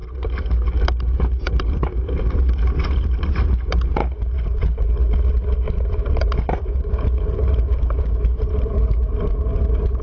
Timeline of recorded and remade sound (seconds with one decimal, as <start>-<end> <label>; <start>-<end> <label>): 0.0-1.0 recorded; 1.0-5.0 remade; 5.0-6.0 recorded; 6.0-10.0 remade